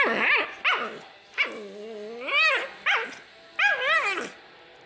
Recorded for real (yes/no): yes